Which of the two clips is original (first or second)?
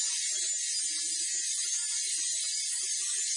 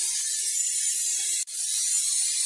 first